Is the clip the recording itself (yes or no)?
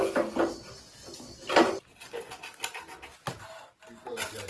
yes